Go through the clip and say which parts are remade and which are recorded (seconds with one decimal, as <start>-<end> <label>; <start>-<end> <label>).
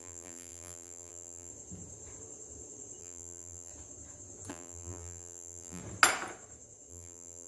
0.0-1.5 remade; 1.5-3.0 recorded; 3.0-3.7 remade; 3.7-4.5 recorded; 4.5-5.8 remade; 5.8-6.9 recorded; 6.9-7.5 remade